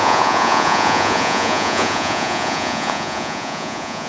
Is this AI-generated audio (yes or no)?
yes